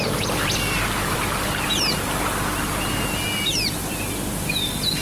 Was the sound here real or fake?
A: real